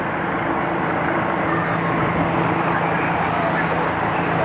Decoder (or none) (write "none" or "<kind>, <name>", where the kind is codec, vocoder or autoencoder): none